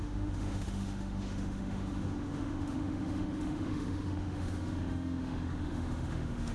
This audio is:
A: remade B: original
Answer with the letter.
A